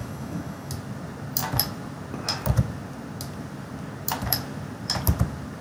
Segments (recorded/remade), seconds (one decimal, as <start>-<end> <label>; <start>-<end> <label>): 0.0-0.7 remade; 0.7-5.6 recorded